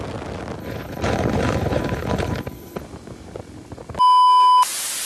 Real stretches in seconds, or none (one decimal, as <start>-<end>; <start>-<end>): 0.0-0.6; 2.8-5.1